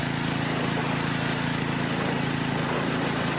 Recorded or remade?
recorded